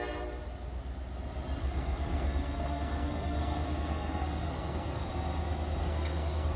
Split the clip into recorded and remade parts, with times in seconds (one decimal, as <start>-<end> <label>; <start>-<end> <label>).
0.0-1.6 recorded; 1.6-5.1 remade; 5.1-5.8 recorded; 5.8-6.6 remade